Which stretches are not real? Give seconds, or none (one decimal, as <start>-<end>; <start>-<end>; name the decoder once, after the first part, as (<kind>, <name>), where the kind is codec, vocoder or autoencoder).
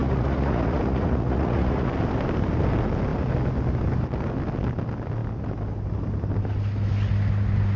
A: 0.0-1.9 (vocoder, Vocos)